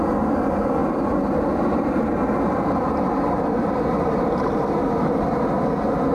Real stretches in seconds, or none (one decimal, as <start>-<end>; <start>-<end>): 0.0-0.8; 4.5-6.1